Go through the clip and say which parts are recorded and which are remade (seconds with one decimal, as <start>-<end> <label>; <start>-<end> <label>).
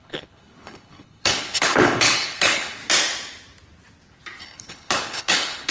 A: 0.0-2.8 remade; 2.8-4.4 recorded; 4.4-5.7 remade